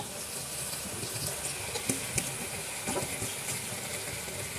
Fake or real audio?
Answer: real